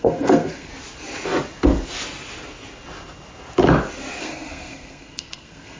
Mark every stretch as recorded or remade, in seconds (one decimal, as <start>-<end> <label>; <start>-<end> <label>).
0.0-0.7 remade; 0.7-4.2 recorded; 4.2-5.8 remade